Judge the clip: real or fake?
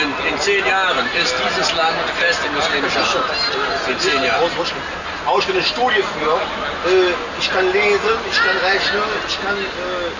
real